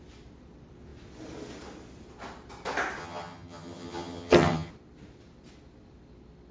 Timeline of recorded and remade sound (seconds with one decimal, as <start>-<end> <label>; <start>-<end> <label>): 0.0-3.0 recorded; 3.0-4.7 remade; 4.7-6.5 recorded